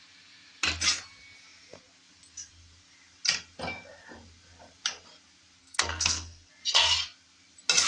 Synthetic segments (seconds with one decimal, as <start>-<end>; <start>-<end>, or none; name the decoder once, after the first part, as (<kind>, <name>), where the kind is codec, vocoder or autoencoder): 5.6-6.5 (codec, SNAC)